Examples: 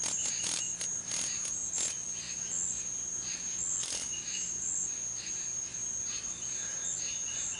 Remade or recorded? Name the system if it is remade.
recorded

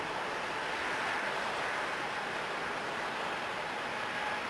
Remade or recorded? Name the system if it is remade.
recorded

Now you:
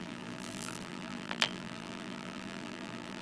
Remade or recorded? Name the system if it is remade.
remade, vocoder, BigVGAN v2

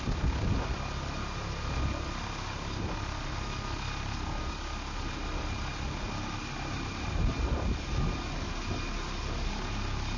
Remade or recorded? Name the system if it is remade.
recorded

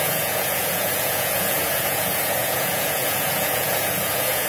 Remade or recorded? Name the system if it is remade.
remade, vocoder, Vocos